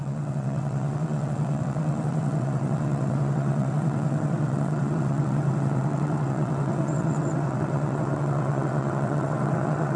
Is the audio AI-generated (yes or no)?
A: yes